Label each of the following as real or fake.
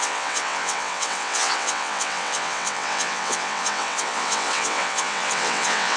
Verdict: fake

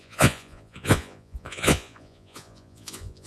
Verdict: fake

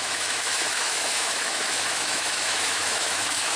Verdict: fake